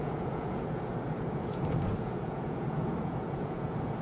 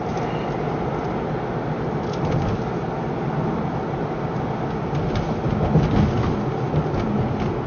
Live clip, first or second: second